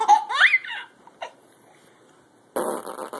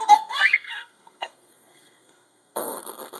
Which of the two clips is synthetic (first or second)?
second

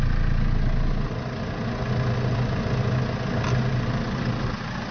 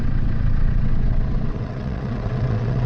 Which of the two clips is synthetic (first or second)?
second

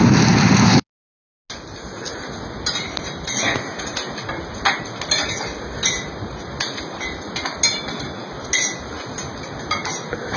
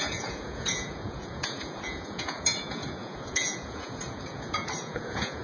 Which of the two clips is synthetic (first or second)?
second